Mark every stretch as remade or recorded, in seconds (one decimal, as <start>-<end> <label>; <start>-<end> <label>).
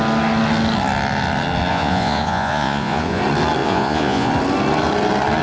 0.0-1.7 recorded; 1.7-3.2 remade; 3.2-3.6 recorded; 3.6-4.3 remade; 4.3-5.4 recorded